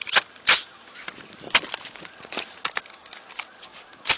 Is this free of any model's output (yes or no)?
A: yes